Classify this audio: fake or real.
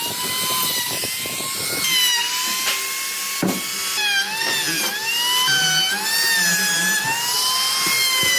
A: real